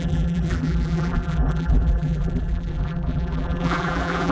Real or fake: fake